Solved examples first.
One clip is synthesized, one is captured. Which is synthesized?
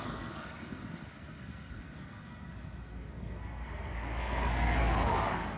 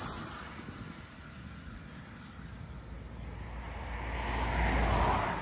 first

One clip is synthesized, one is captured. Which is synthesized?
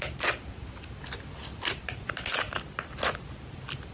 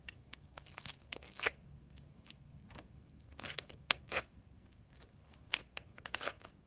second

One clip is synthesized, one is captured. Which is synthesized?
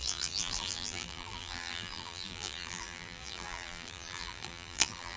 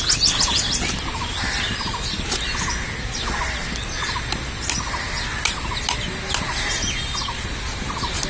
first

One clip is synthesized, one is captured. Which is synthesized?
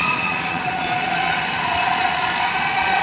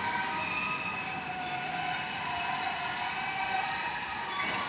first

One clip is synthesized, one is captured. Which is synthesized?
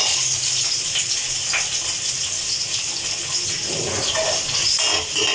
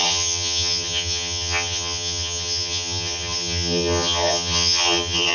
second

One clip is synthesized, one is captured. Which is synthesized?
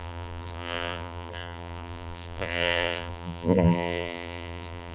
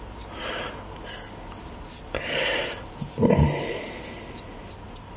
first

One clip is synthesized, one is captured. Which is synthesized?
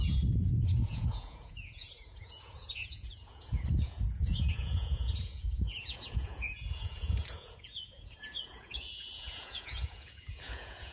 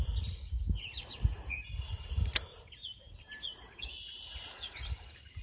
first